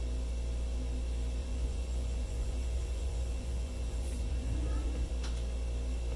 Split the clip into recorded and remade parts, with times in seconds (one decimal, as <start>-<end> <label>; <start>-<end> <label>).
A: 0.0-1.4 recorded; 1.4-5.1 remade; 5.1-6.2 recorded